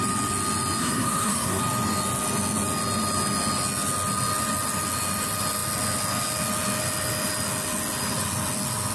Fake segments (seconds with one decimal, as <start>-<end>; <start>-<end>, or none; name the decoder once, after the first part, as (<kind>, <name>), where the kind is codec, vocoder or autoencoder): 0.8-1.6 (codec, SNAC)

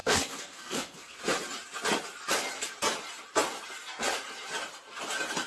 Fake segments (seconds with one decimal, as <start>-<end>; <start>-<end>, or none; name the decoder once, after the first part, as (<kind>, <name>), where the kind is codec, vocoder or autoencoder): 0.0-1.2 (codec, SNAC)

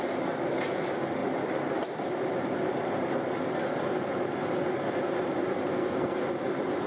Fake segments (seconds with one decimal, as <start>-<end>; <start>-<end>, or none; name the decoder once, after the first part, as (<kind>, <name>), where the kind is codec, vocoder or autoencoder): 5.7-6.2 (codec, SNAC)

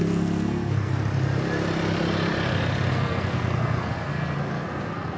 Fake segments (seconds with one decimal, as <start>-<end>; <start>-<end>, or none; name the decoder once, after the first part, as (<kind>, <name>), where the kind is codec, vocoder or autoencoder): 0.0-0.9 (codec, SNAC); 2.9-5.2

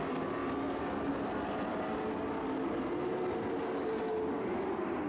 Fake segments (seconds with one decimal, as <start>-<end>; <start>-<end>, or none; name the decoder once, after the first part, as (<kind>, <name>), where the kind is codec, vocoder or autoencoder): none

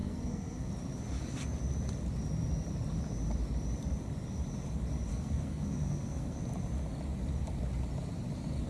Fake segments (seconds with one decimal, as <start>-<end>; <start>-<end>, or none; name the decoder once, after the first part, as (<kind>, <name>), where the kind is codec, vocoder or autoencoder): 0.0-0.7 (codec, SNAC); 5.1-6.4